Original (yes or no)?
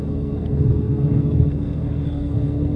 no